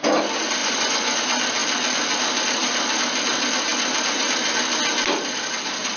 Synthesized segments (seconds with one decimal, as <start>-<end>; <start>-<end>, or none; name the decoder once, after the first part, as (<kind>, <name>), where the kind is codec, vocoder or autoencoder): 0.6-1.2 (vocoder, Vocos)